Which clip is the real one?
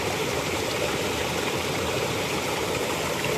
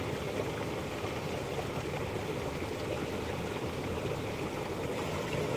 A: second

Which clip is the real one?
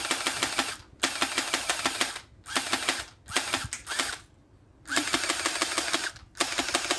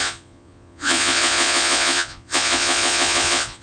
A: first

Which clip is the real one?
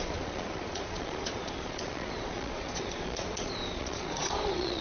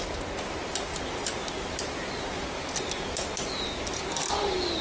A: second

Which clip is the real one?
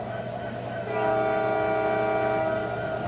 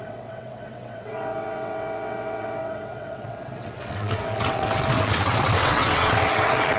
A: first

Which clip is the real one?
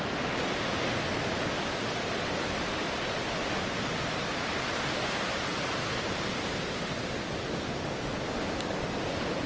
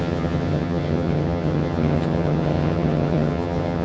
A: first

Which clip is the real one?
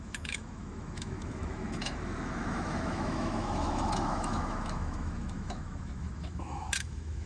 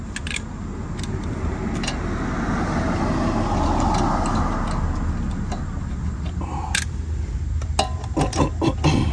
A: second